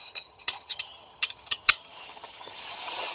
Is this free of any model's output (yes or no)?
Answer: no